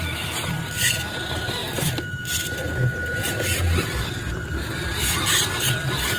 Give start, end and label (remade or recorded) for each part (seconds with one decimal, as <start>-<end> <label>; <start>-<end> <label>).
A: 0.0-6.2 recorded